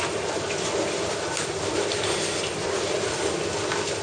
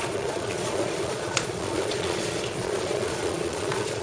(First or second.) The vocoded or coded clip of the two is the second